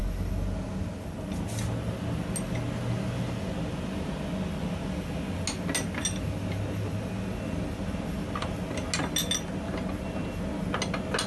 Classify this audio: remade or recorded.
recorded